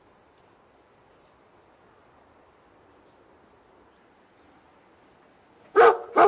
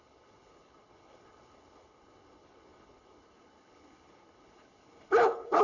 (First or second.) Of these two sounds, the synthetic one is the second